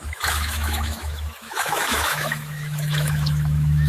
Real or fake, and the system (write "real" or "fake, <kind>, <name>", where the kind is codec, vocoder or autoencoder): fake, autoencoder, DAC-VAE